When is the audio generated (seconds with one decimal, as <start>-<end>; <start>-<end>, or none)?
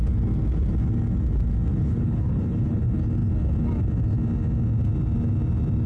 1.7-2.8